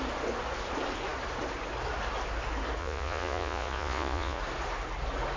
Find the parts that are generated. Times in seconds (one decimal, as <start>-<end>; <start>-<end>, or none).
2.8-4.4